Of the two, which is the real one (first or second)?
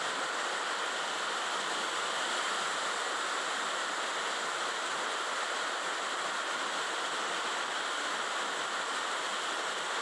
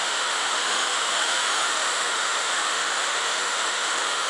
first